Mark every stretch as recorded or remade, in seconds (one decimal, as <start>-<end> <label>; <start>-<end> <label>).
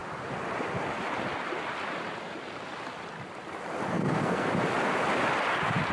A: 0.0-3.9 recorded; 3.9-4.5 remade; 4.5-5.9 recorded